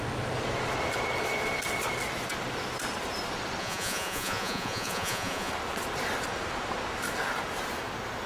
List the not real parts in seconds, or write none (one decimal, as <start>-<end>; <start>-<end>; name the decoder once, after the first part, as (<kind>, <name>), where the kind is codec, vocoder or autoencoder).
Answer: 3.6-5.5 (vocoder, Vocos)

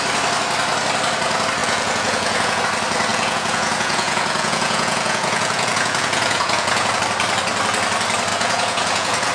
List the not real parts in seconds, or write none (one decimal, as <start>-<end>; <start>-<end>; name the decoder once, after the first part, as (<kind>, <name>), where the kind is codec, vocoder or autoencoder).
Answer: 1.6-2.6 (vocoder, Vocos); 3.1-7.0; 8.3-9.3

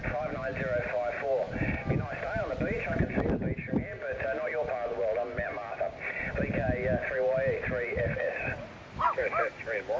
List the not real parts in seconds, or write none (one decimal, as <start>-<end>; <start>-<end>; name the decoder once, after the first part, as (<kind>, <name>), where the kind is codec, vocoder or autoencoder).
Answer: none

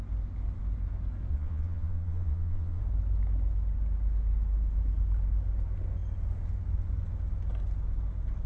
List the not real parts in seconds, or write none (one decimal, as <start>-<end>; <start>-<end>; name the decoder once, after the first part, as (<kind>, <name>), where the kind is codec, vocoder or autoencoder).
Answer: 1.3-2.8 (vocoder, Vocos)